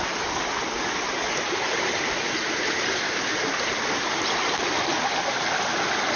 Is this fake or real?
real